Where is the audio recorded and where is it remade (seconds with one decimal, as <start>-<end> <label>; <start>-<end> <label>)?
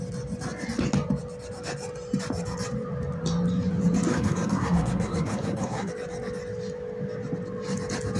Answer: 0.0-4.1 recorded; 4.1-5.9 remade; 5.9-8.2 recorded